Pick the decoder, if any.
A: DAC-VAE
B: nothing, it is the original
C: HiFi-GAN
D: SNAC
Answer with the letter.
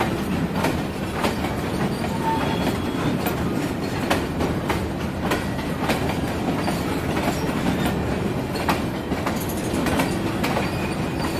B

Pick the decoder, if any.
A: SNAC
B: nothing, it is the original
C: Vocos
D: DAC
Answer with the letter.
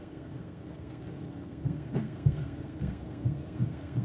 A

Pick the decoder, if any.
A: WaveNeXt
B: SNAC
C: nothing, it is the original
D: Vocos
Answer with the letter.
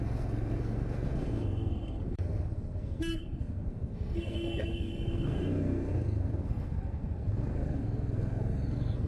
B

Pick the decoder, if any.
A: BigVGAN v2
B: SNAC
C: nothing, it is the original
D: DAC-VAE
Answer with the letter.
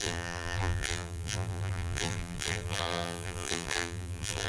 A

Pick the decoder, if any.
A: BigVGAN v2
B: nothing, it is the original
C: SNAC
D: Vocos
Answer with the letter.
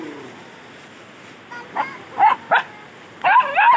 B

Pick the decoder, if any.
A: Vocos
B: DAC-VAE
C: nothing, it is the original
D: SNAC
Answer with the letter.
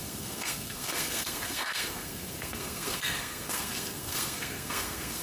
D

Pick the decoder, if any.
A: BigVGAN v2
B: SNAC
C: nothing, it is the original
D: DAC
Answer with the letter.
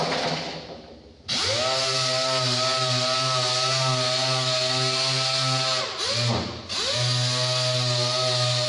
C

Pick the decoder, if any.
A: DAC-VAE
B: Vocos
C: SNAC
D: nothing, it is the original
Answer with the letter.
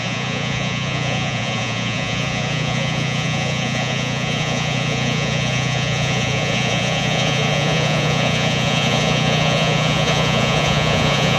B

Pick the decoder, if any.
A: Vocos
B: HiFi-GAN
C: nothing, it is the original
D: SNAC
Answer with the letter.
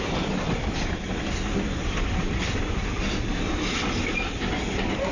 C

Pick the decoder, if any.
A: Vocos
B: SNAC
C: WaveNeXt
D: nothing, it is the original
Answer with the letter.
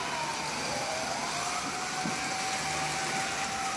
D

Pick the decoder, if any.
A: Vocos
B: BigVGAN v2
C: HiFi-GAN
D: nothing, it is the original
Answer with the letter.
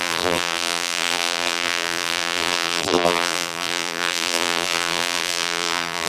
B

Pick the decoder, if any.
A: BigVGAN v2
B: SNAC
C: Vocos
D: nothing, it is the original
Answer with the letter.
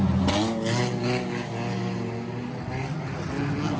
D